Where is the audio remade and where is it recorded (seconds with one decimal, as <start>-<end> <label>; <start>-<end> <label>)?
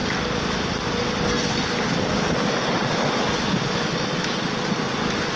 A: 0.0-5.4 recorded